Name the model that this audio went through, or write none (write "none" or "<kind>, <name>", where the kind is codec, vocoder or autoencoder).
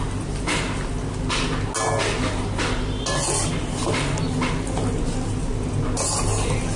none